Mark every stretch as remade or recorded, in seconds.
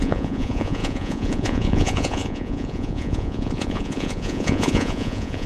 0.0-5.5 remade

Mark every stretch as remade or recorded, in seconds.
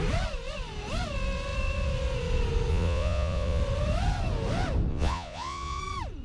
0.0-2.7 recorded; 2.7-3.6 remade; 3.6-4.9 recorded; 4.9-5.8 remade; 5.8-6.2 recorded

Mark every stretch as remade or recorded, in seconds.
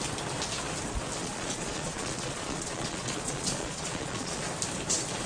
0.0-1.2 recorded; 1.2-4.4 remade; 4.4-5.3 recorded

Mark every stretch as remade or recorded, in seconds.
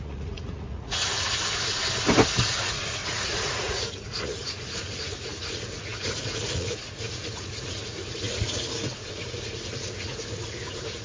0.0-1.8 remade; 1.8-2.5 recorded; 2.5-11.0 remade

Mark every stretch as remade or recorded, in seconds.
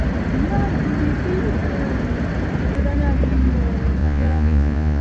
0.0-4.0 recorded; 4.0-5.0 remade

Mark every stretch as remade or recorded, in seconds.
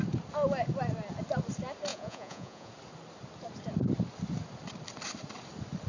0.0-1.9 recorded; 1.9-2.7 remade; 2.7-5.9 recorded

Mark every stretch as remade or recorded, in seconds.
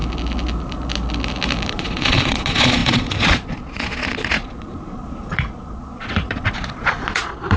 0.0-1.7 recorded; 1.7-7.6 remade